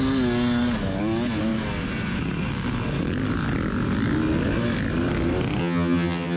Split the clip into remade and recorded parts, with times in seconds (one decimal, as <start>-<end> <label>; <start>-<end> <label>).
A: 0.0-5.6 recorded; 5.6-6.4 remade